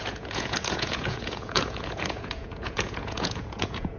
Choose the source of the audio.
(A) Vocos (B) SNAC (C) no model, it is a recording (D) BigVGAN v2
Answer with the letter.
A